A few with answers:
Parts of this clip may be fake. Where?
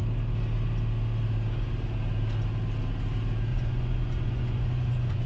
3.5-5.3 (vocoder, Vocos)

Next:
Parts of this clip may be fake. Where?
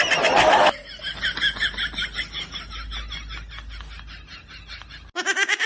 none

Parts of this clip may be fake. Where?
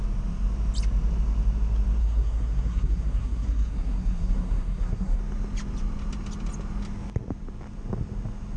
2.0-5.2 (codec, SNAC)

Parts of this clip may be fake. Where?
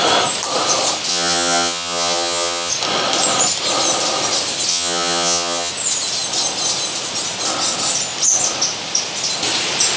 1.1-2.7 (vocoder, HiFi-GAN); 4.7-5.7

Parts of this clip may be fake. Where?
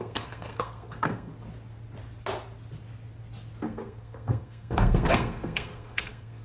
0.0-1.3 (codec, SNAC); 3.6-6.4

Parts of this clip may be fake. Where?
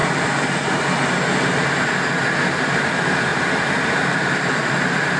2.6-5.2 (vocoder, BigVGAN v2)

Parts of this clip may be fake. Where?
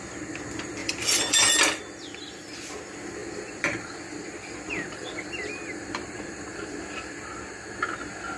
0.8-1.8 (vocoder, BigVGAN v2); 3.2-7.4